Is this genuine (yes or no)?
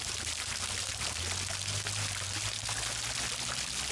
yes